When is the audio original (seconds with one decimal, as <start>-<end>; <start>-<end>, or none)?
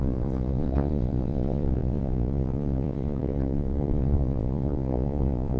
none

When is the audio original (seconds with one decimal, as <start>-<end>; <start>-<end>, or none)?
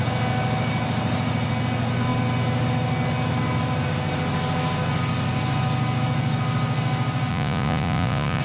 0.0-7.3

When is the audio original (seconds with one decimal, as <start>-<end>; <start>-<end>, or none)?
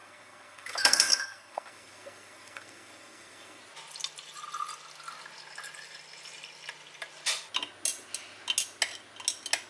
3.6-9.7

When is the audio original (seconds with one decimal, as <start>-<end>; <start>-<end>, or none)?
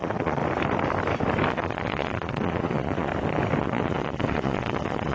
0.4-1.5; 3.1-3.6